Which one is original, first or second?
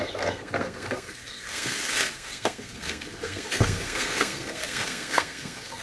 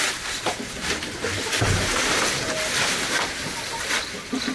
second